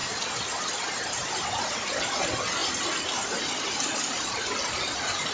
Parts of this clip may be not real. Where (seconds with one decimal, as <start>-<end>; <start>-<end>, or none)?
none